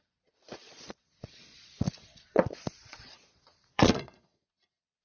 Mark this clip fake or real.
fake